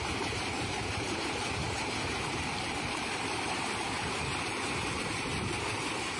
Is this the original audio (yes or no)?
no